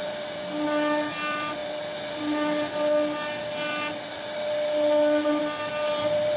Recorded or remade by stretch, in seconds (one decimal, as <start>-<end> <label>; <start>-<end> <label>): 0.0-6.4 recorded